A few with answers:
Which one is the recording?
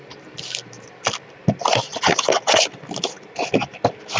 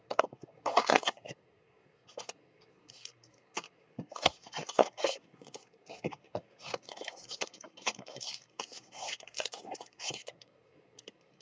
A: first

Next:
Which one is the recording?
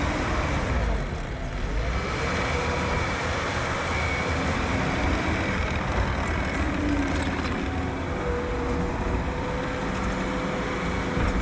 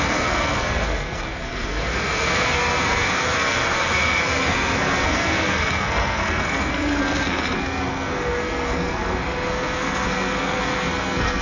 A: first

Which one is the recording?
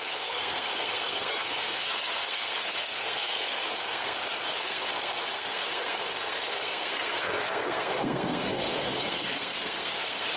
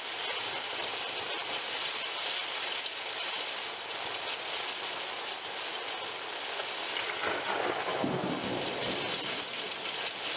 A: second